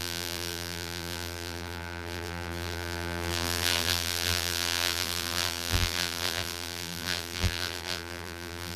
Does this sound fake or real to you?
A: fake